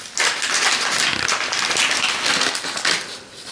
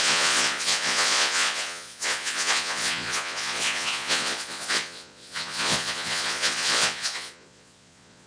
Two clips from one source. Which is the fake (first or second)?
second